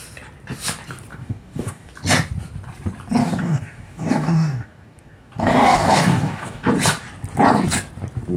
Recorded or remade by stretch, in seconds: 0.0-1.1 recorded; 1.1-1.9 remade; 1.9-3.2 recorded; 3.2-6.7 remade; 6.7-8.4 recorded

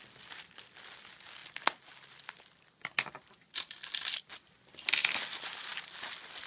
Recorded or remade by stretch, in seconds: 0.0-6.5 recorded

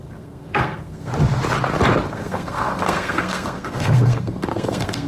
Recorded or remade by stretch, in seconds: 0.0-1.1 remade; 1.1-2.1 recorded; 2.1-5.1 remade

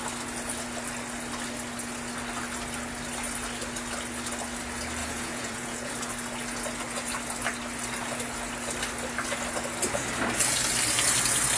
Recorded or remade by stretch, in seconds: 0.0-5.0 recorded; 5.0-5.9 remade; 5.9-11.6 recorded

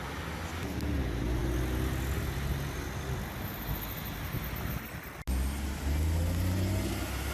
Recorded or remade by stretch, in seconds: 0.0-7.3 recorded

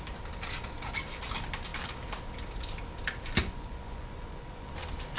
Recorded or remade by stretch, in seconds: 0.0-3.4 recorded; 3.4-4.7 remade; 4.7-5.2 recorded